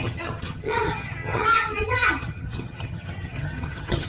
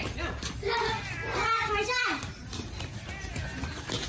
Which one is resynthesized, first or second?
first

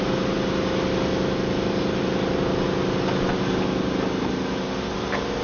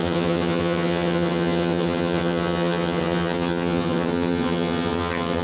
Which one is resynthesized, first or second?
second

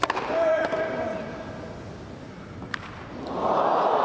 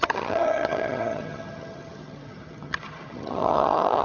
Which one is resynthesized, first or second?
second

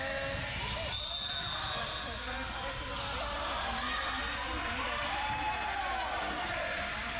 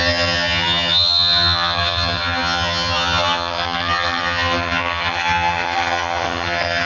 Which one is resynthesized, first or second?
second